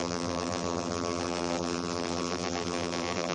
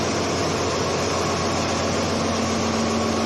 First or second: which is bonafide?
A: second